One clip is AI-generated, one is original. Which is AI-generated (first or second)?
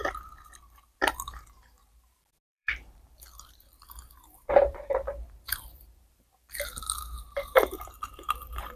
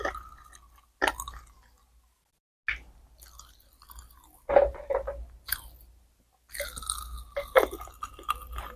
first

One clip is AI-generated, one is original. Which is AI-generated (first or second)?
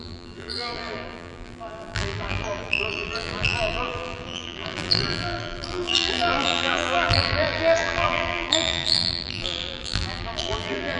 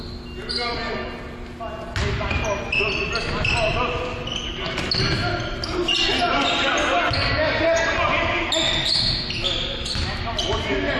first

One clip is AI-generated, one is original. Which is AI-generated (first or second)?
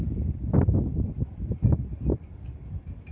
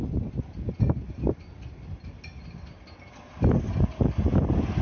first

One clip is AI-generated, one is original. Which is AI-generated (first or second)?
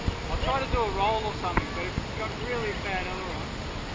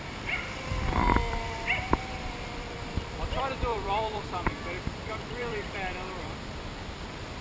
second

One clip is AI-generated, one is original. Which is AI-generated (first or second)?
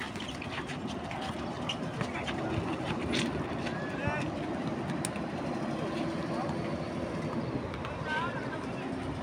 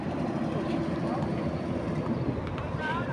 second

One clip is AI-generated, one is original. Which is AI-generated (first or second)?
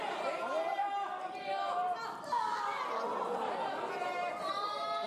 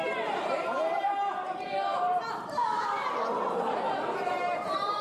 second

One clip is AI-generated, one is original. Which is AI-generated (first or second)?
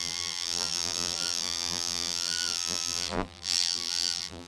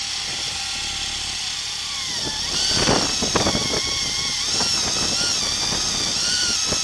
first